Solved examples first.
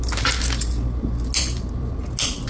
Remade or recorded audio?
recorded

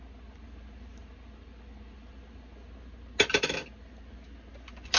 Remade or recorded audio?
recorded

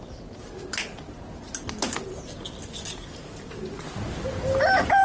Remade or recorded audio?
recorded